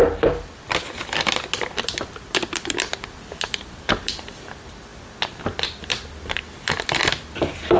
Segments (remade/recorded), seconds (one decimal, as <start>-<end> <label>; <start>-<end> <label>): 0.0-7.8 recorded